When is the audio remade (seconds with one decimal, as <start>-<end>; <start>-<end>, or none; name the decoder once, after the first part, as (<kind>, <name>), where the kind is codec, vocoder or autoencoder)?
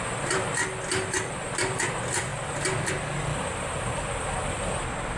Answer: none